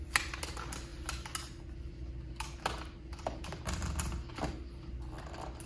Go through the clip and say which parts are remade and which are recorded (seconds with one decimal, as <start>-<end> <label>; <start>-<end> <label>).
0.0-5.7 recorded